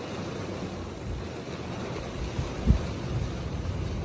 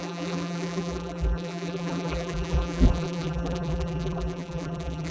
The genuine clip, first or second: first